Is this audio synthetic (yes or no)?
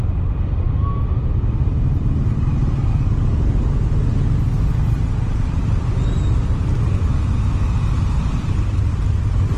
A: no